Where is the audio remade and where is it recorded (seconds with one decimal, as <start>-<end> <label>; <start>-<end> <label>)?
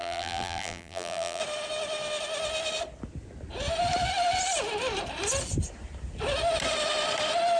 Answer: 0.0-1.4 remade; 1.4-7.6 recorded